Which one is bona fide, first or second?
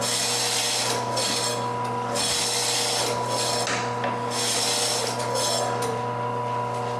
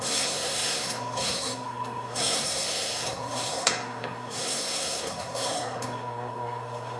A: first